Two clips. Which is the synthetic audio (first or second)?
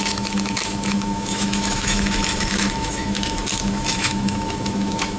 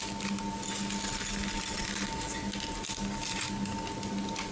first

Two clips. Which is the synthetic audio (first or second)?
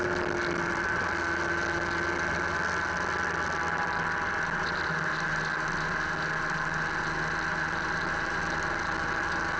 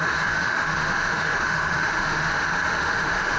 second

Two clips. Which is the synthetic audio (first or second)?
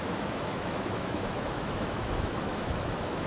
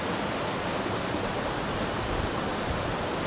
first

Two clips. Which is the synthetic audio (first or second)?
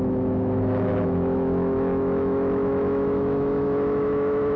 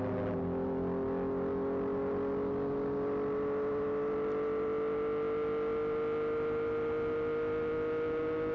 first